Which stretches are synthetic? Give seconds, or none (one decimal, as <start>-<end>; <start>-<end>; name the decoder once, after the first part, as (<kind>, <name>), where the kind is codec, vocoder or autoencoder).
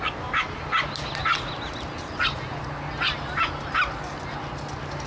none